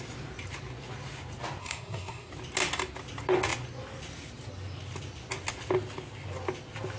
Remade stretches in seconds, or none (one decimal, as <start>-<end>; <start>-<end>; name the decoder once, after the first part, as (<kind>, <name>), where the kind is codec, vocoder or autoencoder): 1.6-2.3 (codec, SNAC)

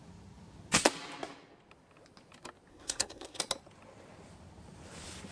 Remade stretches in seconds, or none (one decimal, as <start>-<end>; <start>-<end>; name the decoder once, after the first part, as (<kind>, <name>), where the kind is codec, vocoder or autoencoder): 2.7-3.4 (codec, SNAC)

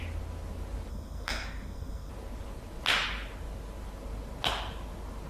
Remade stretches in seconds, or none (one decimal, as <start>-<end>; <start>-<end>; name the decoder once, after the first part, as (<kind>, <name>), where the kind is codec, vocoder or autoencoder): 0.9-2.1 (codec, SNAC)

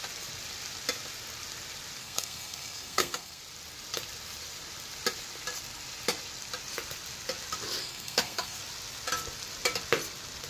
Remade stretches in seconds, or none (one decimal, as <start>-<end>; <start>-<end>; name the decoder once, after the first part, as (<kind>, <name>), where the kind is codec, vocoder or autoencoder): 2.0-3.4 (codec, SNAC); 7.8-8.6